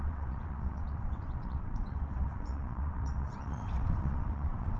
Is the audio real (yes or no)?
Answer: no